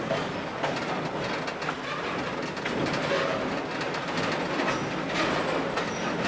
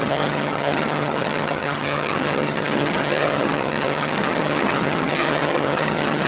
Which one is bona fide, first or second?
first